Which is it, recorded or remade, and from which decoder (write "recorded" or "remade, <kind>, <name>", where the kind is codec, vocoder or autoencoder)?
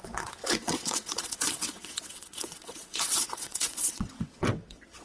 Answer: remade, vocoder, WaveNeXt